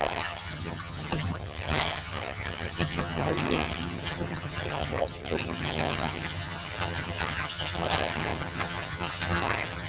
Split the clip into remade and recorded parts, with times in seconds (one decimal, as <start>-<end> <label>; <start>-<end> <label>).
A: 0.0-9.9 remade